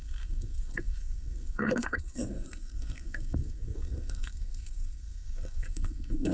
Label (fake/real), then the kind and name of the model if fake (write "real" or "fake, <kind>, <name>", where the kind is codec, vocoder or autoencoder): fake, codec, SNAC